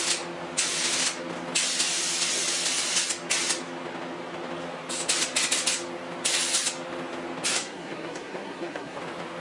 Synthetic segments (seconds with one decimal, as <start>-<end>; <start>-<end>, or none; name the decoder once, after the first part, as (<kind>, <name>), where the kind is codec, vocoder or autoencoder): 7.5-9.0 (codec, SNAC)